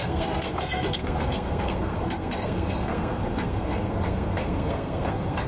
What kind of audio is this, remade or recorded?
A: remade